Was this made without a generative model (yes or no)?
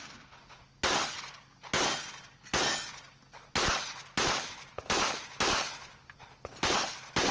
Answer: yes